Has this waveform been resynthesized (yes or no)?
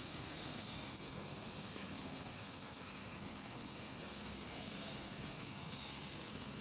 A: yes